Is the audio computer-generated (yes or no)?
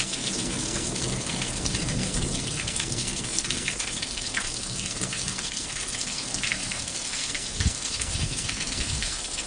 yes